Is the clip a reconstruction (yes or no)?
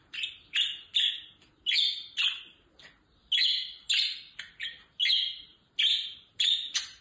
no